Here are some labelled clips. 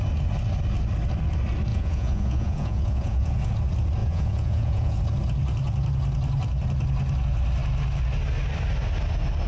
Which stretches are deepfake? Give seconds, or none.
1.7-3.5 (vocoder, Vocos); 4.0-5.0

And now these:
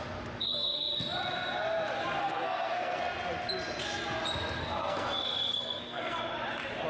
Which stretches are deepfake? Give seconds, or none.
0.4-0.9 (codec, SNAC); 2.2-3.0; 4.6-6.2

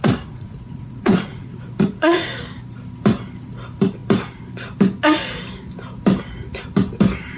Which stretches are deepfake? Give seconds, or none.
0.0-2.3 (vocoder, Vocos)

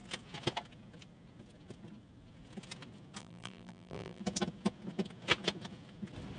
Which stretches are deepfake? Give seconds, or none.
3.2-4.2 (vocoder, BigVGAN v2)

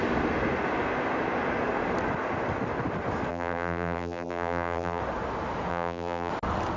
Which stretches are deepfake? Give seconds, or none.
3.3-5.0 (vocoder, BigVGAN v2); 5.7-6.3

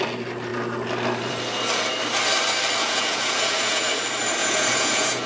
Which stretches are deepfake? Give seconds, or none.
2.8-3.8 (vocoder, Vocos); 4.4-5.3